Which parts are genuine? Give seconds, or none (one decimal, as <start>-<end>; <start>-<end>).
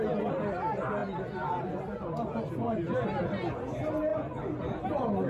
0.0-1.0; 1.6-5.3